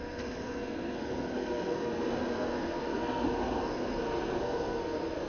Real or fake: fake